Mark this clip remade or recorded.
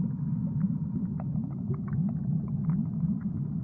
recorded